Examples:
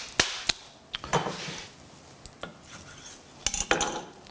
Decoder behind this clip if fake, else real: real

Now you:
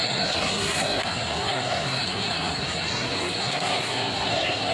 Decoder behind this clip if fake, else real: fake, codec, SNAC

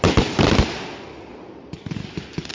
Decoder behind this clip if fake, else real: real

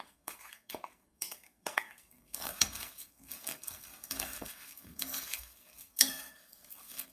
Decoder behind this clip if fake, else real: fake, codec, SNAC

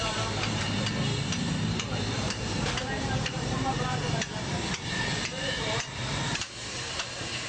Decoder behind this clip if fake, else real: fake, vocoder, BigVGAN v2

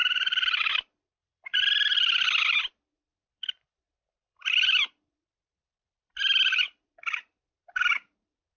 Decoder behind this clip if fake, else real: fake, vocoder, BigVGAN v2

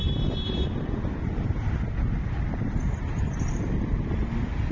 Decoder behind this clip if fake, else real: fake, vocoder, BigVGAN v2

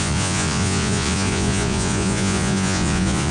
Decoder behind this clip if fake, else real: fake, vocoder, Vocos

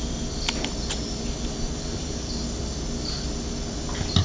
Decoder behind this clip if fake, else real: fake, vocoder, BigVGAN v2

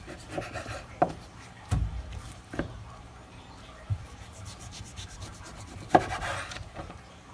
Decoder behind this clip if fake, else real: fake, vocoder, BigVGAN v2